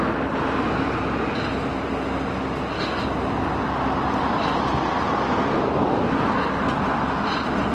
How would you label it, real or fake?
real